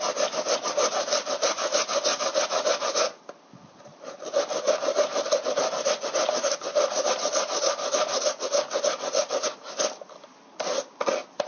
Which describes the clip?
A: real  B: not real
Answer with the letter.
A